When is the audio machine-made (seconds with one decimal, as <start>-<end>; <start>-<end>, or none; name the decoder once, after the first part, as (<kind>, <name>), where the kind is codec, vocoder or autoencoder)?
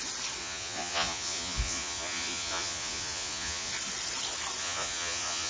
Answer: 0.4-3.7 (vocoder, Vocos); 4.6-5.5